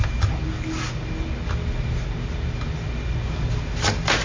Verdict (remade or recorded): recorded